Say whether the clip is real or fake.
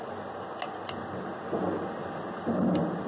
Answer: real